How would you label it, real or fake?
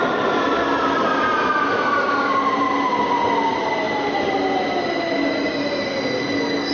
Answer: real